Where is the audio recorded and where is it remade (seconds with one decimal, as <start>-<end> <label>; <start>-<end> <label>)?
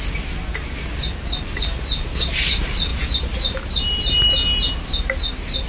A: 0.0-5.7 recorded